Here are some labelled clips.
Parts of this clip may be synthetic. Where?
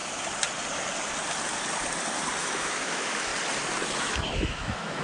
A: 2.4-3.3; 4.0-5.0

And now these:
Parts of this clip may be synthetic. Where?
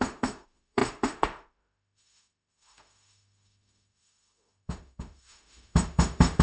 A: 0.0-6.4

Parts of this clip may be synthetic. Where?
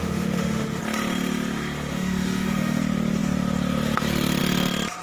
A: 0.0-0.8; 1.9-2.8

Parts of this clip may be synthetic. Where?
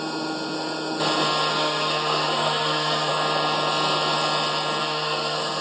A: 1.5-3.1; 4.8-5.6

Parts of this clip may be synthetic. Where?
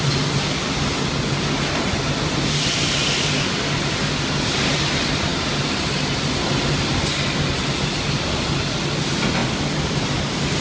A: none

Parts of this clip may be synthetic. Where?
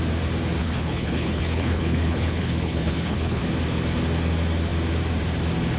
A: 0.6-3.4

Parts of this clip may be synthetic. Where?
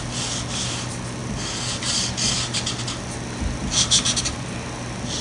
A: none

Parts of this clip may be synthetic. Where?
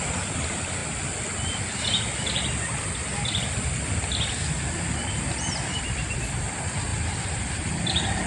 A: 0.0-0.8; 5.8-8.3